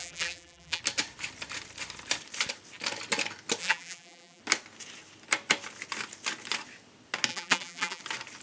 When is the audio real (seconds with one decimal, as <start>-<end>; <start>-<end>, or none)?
0.8-3.6; 4.4-7.3; 8.0-8.4